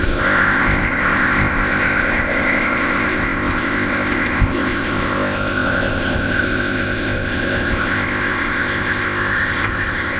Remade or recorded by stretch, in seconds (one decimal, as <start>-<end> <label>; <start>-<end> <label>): 0.0-10.2 remade